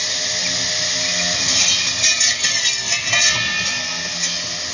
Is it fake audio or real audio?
real